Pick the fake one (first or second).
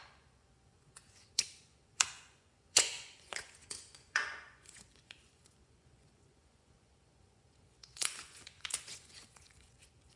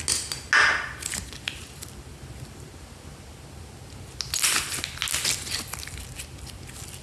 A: first